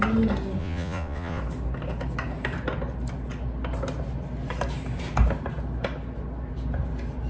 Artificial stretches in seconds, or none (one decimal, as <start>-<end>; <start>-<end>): 0.6-1.4